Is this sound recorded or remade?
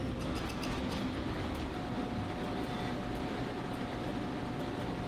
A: recorded